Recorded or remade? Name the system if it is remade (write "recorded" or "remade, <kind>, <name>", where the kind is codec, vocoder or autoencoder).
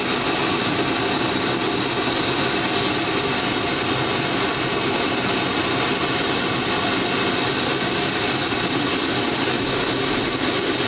recorded